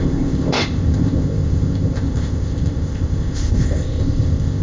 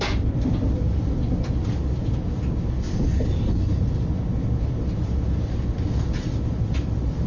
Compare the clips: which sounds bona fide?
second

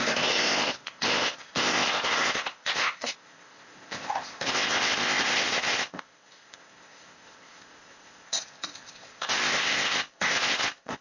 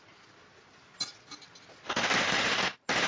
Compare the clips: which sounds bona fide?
second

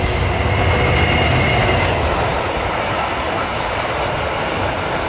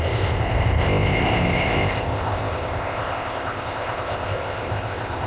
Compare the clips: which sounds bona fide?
first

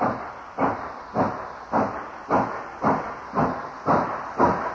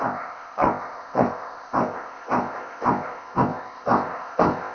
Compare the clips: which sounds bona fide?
first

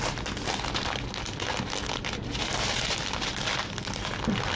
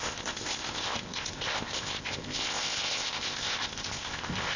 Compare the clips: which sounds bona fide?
first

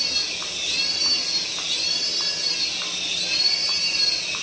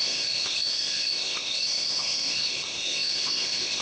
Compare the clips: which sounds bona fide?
first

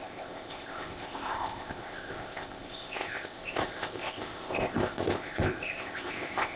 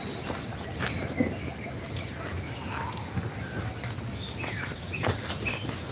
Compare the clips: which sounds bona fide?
second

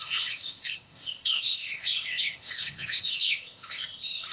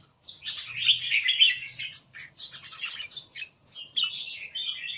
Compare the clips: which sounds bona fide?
second